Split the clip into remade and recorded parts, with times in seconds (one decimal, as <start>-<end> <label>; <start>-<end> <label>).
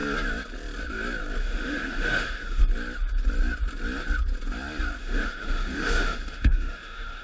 0.0-1.4 recorded; 1.4-2.6 remade; 2.6-5.0 recorded; 5.0-7.2 remade